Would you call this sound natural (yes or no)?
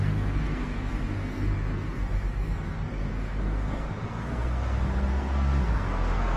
no